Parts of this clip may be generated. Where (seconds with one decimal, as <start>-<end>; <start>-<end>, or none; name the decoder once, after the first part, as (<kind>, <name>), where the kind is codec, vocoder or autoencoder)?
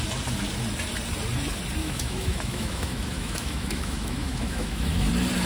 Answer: 1.8-5.1 (autoencoder, DAC-VAE)